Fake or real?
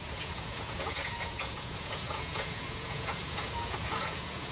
fake